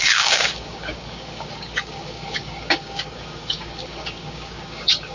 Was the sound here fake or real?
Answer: fake